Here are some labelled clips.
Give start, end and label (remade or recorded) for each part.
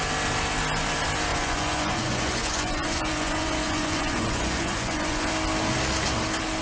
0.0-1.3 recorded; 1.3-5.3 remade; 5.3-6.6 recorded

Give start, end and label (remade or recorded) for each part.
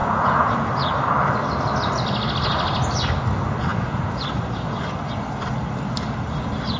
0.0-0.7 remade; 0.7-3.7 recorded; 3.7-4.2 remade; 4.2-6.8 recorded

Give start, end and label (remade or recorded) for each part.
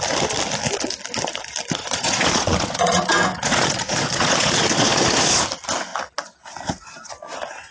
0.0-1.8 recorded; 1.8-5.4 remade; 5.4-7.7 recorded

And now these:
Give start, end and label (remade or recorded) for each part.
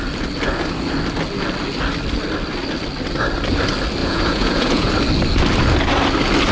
0.0-4.0 recorded; 4.0-4.9 remade; 4.9-6.5 recorded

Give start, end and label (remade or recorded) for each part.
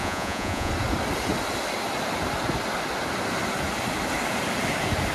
0.0-0.7 remade; 0.7-5.1 recorded